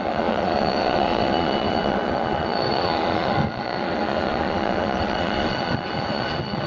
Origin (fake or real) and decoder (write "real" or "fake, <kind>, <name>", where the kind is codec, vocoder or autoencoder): fake, vocoder, Vocos